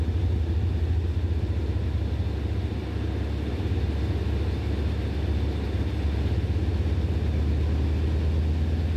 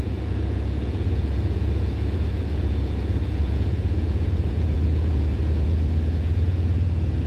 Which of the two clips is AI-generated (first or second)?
second